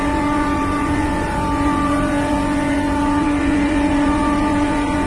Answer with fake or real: fake